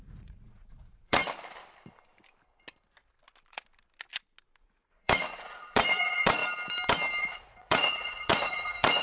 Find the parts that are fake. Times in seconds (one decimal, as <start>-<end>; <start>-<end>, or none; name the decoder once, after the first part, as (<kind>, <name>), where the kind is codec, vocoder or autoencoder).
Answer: 0.0-1.2 (vocoder, Vocos); 4.6-6.4; 7.2-9.0